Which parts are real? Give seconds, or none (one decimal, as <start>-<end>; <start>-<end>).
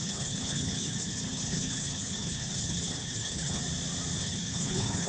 3.6-4.2